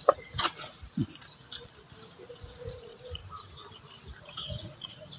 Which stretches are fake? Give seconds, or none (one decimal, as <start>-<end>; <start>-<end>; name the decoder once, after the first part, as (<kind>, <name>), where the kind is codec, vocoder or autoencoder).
0.0-0.8 (vocoder, Vocos); 2.3-3.2; 4.2-5.2